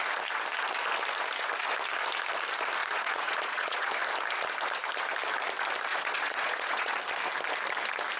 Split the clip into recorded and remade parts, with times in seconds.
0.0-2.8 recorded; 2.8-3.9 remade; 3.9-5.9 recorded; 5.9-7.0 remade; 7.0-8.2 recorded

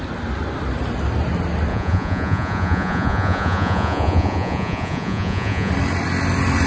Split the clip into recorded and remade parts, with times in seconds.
0.0-1.7 recorded; 1.7-5.7 remade; 5.7-6.7 recorded

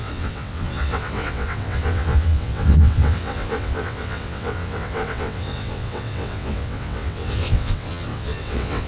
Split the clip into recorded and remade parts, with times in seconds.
0.0-8.9 remade

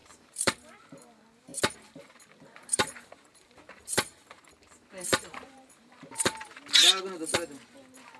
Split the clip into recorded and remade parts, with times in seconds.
0.0-0.7 remade; 0.7-1.5 recorded; 1.5-4.5 remade; 4.5-5.1 recorded; 5.1-6.6 remade; 6.6-8.2 recorded

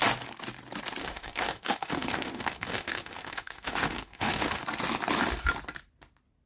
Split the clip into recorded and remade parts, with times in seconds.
0.0-1.0 recorded; 1.0-4.6 remade; 4.6-6.5 recorded

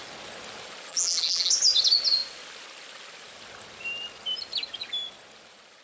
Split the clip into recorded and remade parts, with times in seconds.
0.0-0.9 recorded; 0.9-1.5 remade; 1.5-5.8 recorded